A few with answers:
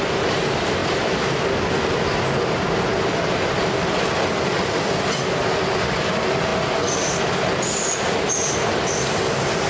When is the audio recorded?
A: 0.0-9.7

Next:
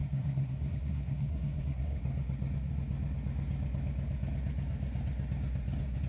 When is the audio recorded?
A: 2.0-6.1

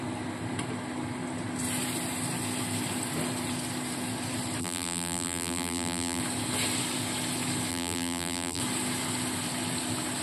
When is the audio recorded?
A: 0.0-4.6; 6.2-7.7; 8.6-10.2

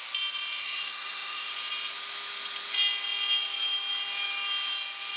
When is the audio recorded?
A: 0.0-0.6; 1.5-5.2